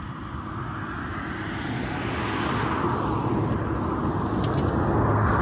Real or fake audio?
real